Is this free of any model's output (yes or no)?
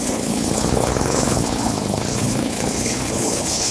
no